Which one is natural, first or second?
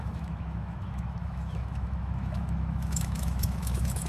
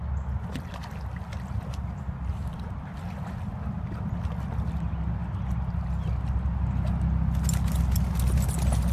second